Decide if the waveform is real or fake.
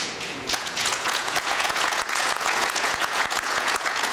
fake